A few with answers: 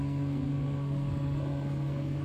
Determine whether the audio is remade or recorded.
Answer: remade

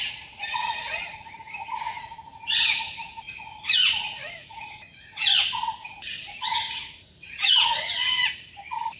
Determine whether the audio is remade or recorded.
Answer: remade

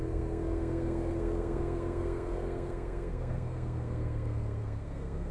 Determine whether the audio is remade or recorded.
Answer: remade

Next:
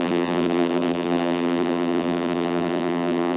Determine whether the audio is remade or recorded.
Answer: remade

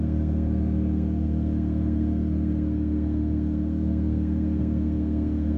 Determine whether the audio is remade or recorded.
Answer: remade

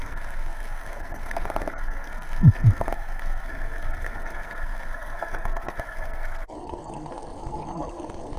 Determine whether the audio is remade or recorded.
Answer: remade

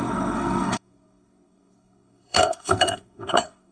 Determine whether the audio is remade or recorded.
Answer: remade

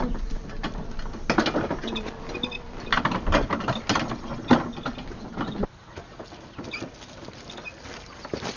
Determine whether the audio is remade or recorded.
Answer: recorded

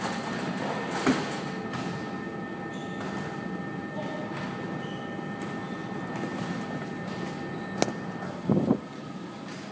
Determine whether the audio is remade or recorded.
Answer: recorded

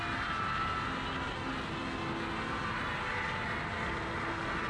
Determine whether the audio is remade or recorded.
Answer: recorded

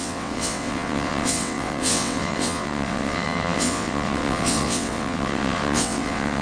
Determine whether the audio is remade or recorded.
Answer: remade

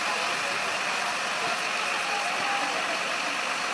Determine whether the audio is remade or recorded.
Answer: recorded